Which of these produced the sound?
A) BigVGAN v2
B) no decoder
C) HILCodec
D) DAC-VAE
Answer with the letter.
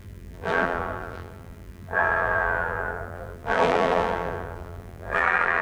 A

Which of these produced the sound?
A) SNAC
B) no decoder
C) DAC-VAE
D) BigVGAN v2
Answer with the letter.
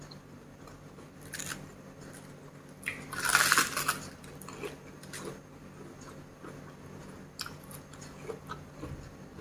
B